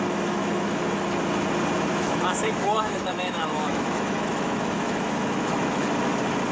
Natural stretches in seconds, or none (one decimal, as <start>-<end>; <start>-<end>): 0.0-0.4; 1.0-1.9; 5.8-6.5